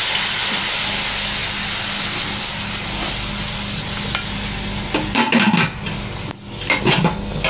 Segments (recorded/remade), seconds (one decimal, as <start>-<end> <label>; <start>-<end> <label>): 0.0-7.5 recorded